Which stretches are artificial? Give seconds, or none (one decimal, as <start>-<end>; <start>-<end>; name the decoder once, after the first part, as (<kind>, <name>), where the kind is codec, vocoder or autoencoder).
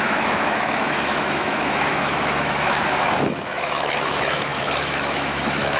0.0-5.8 (autoencoder, DAC-VAE)